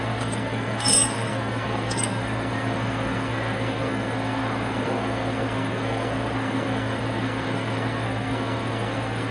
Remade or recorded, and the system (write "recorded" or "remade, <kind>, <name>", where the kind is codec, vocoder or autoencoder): remade, codec, SNAC